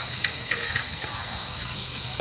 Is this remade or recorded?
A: remade